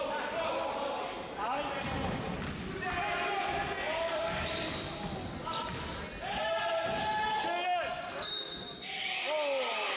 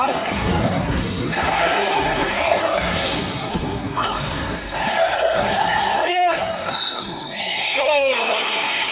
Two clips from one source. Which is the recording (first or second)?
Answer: first